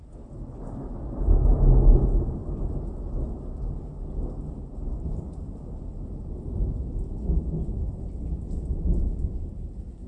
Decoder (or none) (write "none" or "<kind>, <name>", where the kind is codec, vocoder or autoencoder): none